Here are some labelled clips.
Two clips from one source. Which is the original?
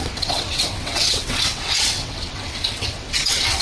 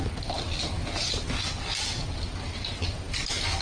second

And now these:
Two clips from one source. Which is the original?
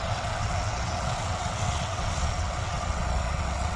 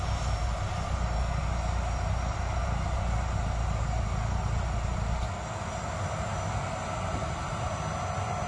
second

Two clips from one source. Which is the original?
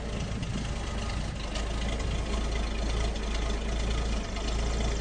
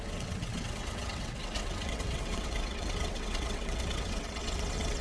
first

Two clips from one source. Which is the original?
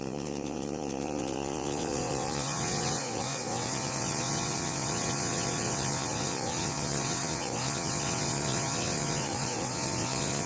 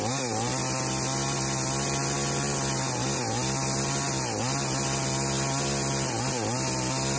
second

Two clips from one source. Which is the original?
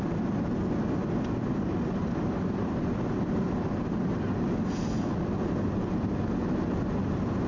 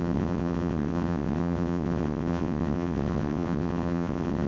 first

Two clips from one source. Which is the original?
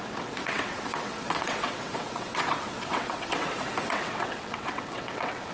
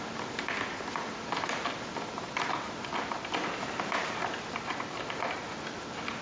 second